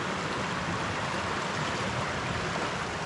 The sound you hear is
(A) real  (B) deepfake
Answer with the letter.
A